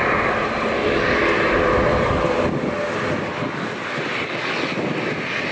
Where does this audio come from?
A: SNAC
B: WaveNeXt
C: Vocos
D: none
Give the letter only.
D